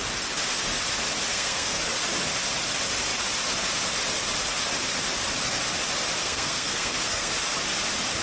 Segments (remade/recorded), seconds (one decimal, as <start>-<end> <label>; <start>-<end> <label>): 0.0-1.3 recorded; 1.3-1.8 remade; 1.8-6.2 recorded; 6.2-7.3 remade; 7.3-8.2 recorded